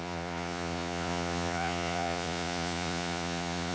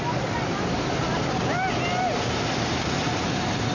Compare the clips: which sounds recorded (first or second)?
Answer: second